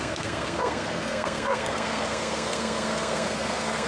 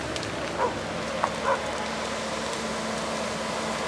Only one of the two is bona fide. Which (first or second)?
second